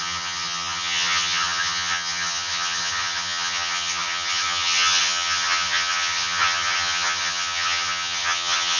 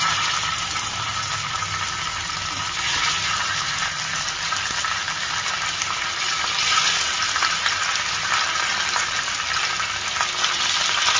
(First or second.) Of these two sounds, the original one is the second